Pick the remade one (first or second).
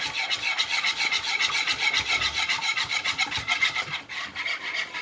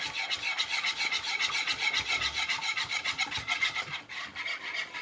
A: first